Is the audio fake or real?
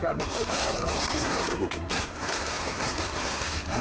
fake